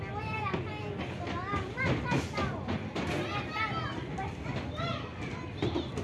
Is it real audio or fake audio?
real